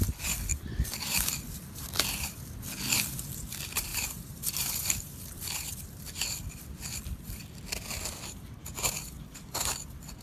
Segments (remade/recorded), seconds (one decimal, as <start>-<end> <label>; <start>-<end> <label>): 0.0-0.5 recorded; 0.5-1.3 remade; 1.3-3.9 recorded; 3.9-7.4 remade; 7.4-8.6 recorded; 8.6-9.7 remade; 9.7-10.2 recorded